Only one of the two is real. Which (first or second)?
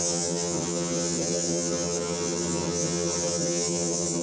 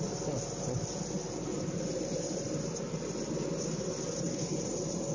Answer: second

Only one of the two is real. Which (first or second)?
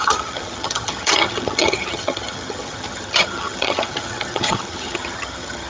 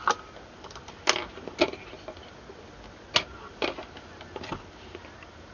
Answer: second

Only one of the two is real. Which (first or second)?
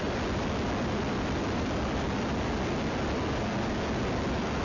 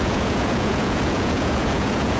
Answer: first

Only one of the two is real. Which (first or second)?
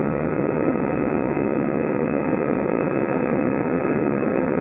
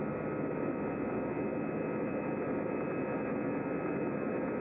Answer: second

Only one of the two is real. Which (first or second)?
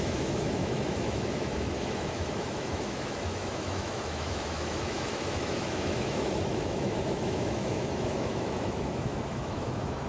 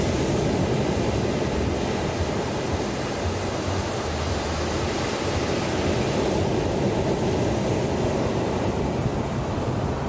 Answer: second